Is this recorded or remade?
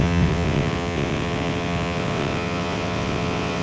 remade